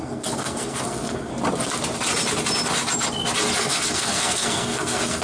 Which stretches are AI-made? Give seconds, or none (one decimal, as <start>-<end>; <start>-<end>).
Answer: 0.0-1.3; 3.6-5.2